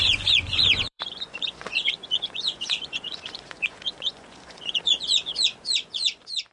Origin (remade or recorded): remade